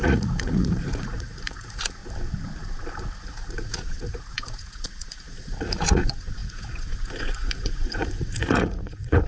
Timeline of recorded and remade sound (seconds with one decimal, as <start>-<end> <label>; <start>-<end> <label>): 0.0-2.0 remade; 2.0-3.2 recorded; 3.2-9.3 remade